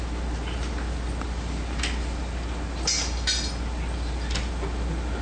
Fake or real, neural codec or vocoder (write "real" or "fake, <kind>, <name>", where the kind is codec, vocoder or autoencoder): real